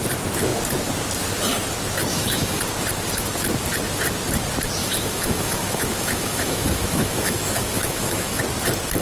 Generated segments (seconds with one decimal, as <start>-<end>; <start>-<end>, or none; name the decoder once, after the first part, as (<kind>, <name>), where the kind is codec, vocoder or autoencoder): 2.1-2.6 (autoencoder, DAC-VAE); 4.8-8.4